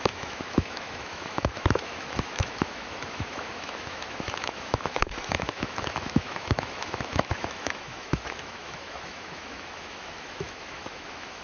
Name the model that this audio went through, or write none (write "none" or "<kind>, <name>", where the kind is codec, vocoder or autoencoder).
autoencoder, DAC-VAE